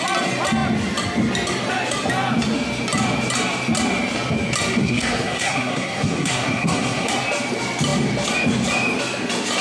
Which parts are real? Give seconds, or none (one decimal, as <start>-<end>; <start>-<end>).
0.0-4.8; 7.1-9.6